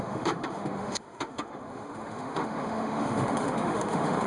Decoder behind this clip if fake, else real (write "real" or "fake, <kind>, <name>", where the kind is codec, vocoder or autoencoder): fake, autoencoder, DAC-VAE